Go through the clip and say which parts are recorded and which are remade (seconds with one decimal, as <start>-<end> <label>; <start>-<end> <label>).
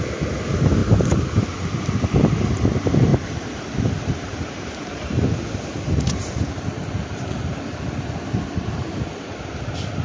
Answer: 0.0-0.8 recorded; 0.8-1.4 remade; 1.4-3.1 recorded; 3.1-7.9 remade; 7.9-10.0 recorded